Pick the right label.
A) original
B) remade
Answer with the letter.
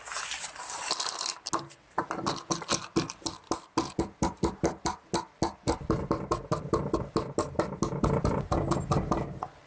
A